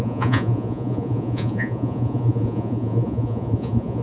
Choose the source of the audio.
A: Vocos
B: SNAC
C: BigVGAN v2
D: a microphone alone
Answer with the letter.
A